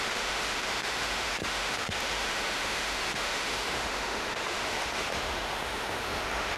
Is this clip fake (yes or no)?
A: yes